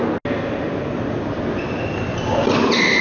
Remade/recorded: recorded